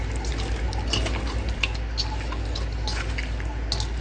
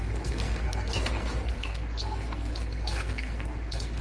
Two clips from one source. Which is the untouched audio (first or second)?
first